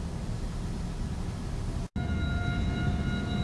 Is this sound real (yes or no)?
yes